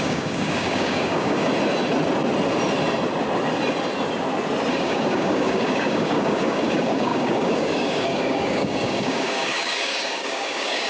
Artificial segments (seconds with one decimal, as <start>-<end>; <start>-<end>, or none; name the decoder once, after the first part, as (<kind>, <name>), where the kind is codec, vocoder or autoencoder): 0.0-1.5 (codec, DAC); 4.7-10.9